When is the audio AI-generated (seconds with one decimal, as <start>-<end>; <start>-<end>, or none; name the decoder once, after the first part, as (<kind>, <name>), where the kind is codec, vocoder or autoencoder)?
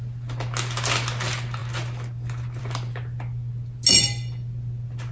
none